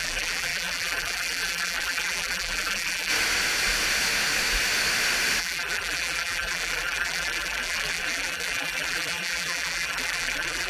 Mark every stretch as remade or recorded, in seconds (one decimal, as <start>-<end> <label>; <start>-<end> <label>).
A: 0.0-3.1 remade; 3.1-5.4 recorded; 5.4-10.7 remade